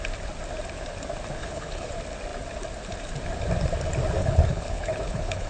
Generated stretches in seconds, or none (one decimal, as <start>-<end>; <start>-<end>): 1.4-1.9; 4.2-5.5

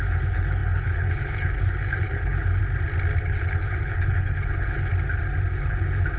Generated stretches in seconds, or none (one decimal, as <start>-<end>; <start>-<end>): 0.0-2.6; 3.2-4.9; 5.5-6.2

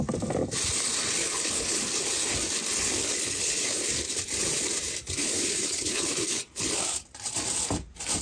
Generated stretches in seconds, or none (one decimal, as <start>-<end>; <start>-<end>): 1.2-1.8; 3.0-4.2; 5.2-6.8

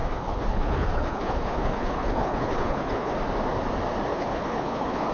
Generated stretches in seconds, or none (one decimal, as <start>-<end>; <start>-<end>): 0.0-3.1; 4.1-5.1

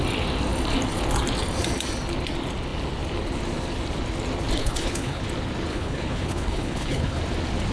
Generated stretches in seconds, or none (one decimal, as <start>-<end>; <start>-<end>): 4.6-5.2; 5.7-7.2

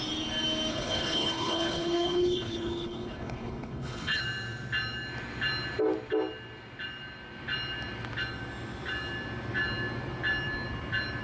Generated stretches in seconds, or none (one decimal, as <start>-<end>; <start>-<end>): 0.7-4.2